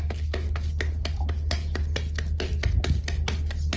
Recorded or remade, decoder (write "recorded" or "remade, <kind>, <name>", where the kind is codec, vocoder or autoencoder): recorded